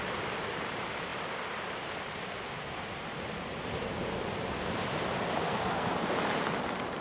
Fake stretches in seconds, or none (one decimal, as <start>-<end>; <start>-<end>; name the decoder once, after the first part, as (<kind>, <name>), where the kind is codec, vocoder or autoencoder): 5.4-5.9 (codec, SNAC)